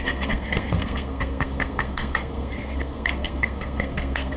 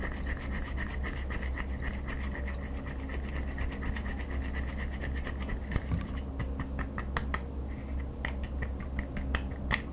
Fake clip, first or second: first